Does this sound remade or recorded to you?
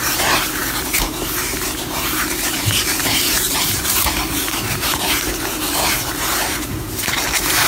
remade